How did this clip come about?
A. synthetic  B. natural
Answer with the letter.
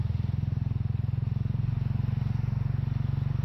B